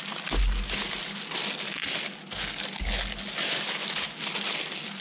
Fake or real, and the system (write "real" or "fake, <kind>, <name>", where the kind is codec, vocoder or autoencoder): real